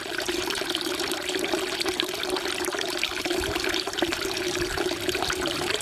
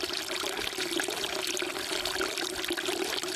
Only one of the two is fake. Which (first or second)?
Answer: first